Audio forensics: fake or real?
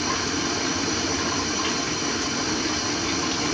real